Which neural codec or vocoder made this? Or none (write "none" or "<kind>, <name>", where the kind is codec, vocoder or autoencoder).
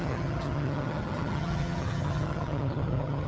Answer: vocoder, HiFi-GAN